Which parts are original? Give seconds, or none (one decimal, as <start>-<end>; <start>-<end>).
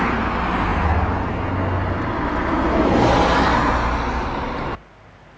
0.0-5.4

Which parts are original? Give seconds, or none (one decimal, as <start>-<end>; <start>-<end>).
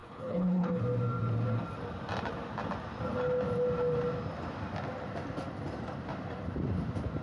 0.8-7.2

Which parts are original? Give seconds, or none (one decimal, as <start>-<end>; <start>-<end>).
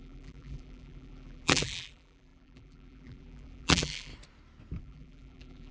4.1-4.8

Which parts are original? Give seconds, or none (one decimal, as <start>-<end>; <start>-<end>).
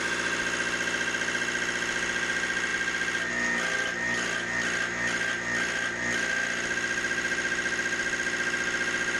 0.0-9.2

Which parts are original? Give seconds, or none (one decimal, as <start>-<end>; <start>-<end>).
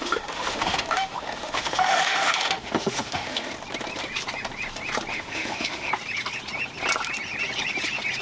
3.5-5.1; 5.9-8.2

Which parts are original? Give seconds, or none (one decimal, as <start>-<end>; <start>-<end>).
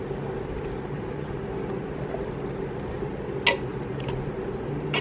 0.0-3.7; 4.3-5.0